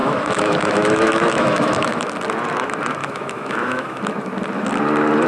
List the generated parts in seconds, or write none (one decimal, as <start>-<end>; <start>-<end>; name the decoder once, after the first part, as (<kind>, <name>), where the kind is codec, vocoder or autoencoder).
0.0-2.1 (autoencoder, DAC-VAE); 3.0-4.0